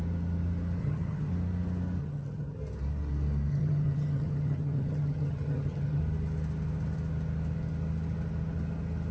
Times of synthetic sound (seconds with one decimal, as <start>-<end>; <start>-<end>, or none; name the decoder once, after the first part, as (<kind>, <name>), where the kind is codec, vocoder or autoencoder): 0.8-1.3 (vocoder, HiFi-GAN); 2.0-2.6; 3.5-6.0